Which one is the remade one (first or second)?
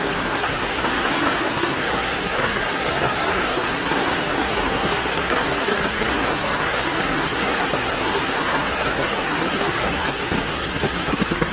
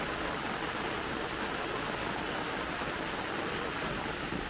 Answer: first